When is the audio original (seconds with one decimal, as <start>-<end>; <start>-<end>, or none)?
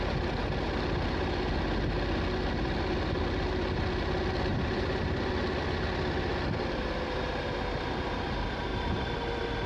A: 0.0-4.5; 5.3-9.7